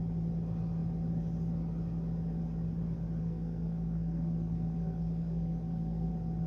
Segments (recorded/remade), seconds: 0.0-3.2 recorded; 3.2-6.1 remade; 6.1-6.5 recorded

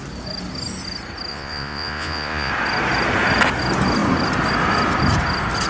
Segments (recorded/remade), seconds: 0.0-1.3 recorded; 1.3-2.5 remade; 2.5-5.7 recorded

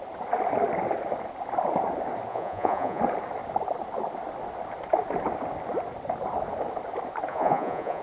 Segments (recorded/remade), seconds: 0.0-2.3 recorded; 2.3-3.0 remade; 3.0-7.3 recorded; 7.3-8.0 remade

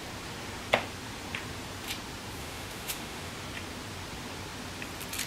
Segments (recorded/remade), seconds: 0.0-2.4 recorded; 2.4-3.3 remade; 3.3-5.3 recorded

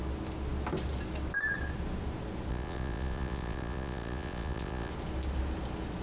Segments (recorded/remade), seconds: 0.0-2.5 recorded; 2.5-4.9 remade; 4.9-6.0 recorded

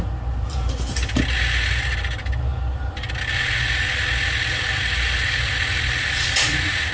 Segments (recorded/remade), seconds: 0.0-6.9 recorded

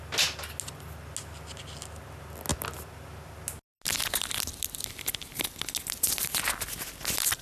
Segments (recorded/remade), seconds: 0.0-7.4 recorded

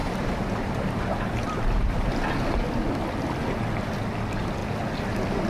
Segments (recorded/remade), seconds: 0.0-2.1 remade; 2.1-5.5 recorded